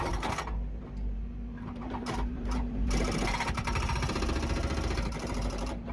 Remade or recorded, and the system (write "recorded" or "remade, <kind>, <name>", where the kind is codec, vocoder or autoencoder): remade, vocoder, BigVGAN v2